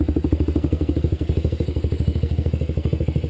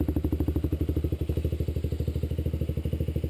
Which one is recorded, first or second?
second